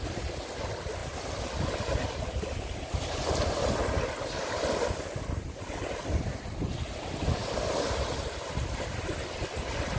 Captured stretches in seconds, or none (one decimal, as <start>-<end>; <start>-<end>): 0.0-10.0